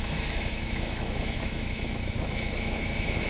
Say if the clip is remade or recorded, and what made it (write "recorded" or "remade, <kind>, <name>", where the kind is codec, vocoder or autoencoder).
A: remade, autoencoder, DAC-VAE